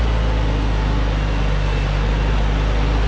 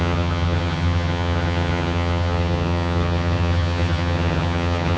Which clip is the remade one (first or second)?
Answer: second